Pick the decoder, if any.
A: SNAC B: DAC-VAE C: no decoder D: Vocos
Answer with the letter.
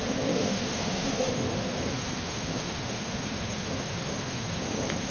B